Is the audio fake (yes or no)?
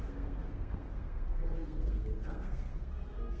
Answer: yes